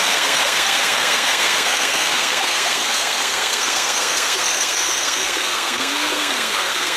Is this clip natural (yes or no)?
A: no